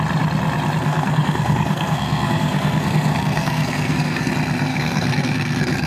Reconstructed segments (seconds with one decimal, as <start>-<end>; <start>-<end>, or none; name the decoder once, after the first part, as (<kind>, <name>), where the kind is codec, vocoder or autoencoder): 0.8-4.3 (codec, SNAC); 4.7-5.9